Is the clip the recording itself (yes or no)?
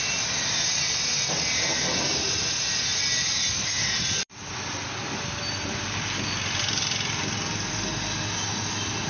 yes